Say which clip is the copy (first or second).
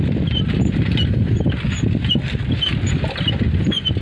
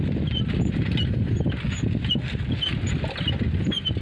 first